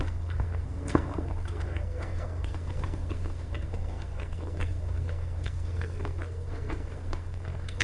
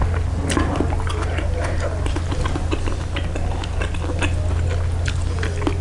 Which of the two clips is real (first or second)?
second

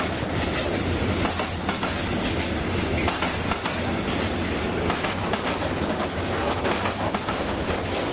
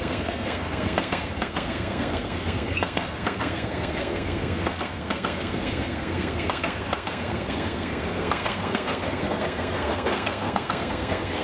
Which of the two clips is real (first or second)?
first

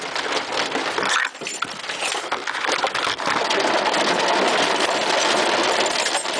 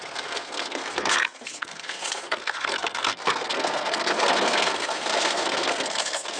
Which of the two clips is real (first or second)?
first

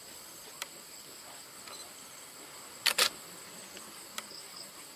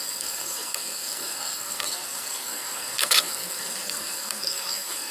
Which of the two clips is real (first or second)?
first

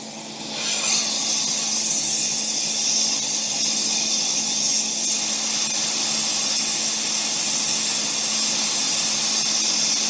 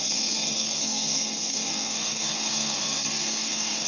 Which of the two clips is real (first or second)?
first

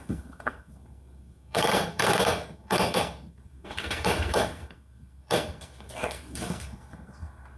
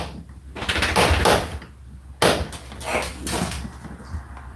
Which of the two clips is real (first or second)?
second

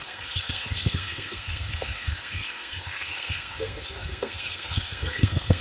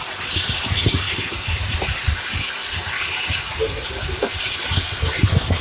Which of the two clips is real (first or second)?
second